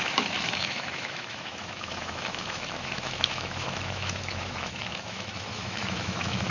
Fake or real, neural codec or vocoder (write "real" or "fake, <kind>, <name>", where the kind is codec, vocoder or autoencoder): fake, autoencoder, DAC-VAE